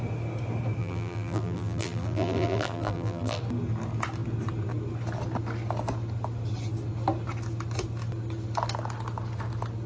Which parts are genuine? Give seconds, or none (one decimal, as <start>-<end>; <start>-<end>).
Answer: 0.0-0.8; 3.4-9.9